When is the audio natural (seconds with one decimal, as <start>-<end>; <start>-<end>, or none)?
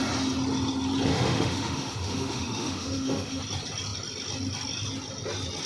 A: 0.0-1.1; 3.4-5.7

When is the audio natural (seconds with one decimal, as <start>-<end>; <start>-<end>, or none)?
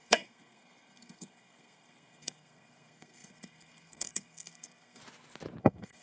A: 5.0-5.6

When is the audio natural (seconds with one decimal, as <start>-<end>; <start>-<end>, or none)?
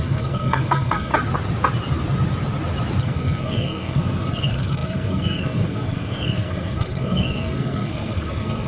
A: 1.1-3.0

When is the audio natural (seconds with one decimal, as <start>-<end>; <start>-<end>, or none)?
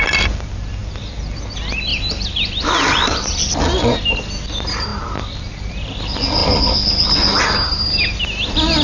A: 0.0-1.9; 3.5-8.8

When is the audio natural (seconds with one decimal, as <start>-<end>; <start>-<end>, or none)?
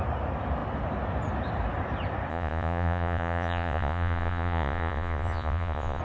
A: 0.0-2.3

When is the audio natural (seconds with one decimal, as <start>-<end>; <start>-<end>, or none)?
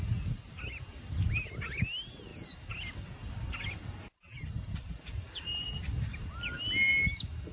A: 0.0-7.5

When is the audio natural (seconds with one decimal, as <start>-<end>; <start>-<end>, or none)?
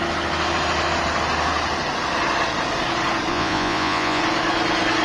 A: 0.0-3.3; 4.2-5.0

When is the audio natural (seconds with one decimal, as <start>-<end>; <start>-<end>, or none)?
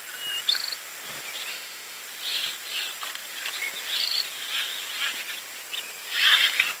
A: 0.0-1.5; 2.0-6.8